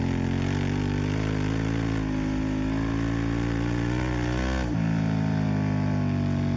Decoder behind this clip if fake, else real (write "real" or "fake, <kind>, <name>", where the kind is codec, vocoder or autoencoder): real